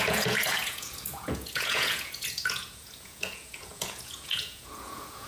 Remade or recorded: remade